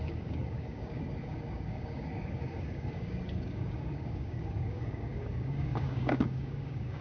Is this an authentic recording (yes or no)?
no